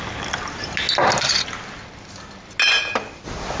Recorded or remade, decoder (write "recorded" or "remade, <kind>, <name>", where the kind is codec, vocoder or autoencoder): recorded